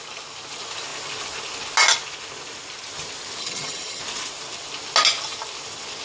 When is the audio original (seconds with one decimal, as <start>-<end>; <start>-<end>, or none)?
0.0-3.4; 4.0-6.0